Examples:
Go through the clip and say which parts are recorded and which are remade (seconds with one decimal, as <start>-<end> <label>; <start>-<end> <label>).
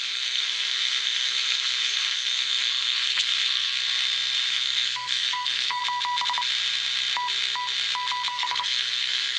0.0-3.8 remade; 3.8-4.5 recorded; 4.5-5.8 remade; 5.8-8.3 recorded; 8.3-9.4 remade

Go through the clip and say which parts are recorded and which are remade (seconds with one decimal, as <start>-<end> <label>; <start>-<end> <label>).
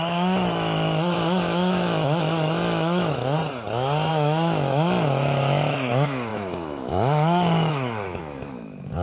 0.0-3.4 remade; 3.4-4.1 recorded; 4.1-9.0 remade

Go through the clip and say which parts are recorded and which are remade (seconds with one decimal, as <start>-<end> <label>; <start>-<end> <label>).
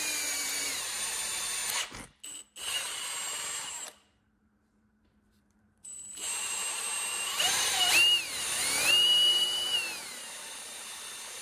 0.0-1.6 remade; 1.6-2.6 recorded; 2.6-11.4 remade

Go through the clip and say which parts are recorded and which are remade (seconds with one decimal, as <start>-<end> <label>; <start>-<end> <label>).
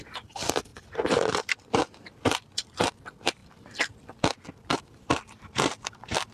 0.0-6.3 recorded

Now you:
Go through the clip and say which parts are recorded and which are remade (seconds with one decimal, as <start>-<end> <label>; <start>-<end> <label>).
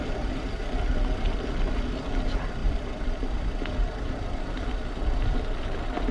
0.0-6.1 recorded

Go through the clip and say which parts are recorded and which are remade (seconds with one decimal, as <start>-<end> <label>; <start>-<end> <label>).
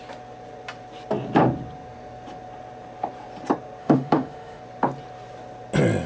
0.0-3.8 recorded; 3.8-4.6 remade; 4.6-6.1 recorded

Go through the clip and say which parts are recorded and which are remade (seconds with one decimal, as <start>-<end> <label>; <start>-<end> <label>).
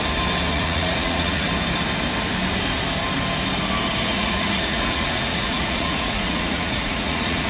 0.0-0.5 recorded; 0.5-1.5 remade; 1.5-4.1 recorded; 4.1-7.5 remade